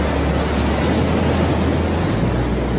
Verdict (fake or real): real